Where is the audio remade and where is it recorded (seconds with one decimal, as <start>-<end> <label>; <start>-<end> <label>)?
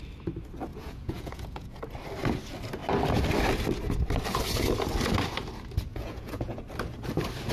0.0-0.7 recorded; 0.7-1.8 remade; 1.8-5.9 recorded; 5.9-6.6 remade; 6.6-7.5 recorded